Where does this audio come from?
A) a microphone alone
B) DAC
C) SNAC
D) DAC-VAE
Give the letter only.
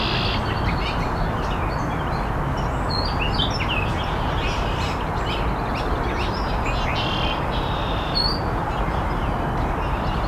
A